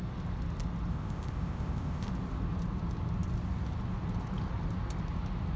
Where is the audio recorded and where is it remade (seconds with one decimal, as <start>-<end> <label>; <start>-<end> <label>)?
0.0-0.9 recorded; 0.9-2.1 remade; 2.1-5.6 recorded